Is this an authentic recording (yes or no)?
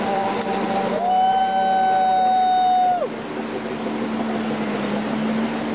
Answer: yes